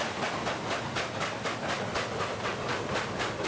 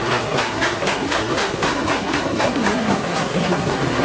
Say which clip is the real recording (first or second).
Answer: first